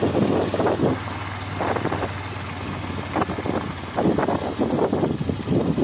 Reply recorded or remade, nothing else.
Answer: recorded